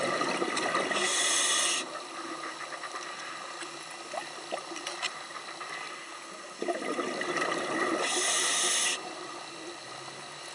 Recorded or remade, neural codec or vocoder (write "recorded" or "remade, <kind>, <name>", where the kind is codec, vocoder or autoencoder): recorded